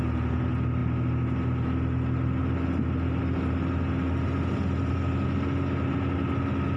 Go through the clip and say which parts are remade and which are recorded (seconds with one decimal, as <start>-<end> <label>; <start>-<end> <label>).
0.0-6.8 recorded